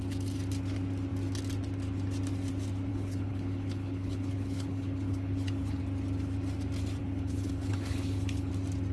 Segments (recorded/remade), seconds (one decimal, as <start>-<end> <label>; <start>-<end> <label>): 0.0-2.9 recorded; 2.9-5.8 remade; 5.8-7.0 recorded; 7.0-8.5 remade; 8.5-8.9 recorded